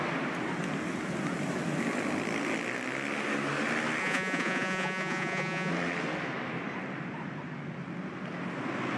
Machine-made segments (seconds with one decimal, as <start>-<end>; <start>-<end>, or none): 4.0-5.7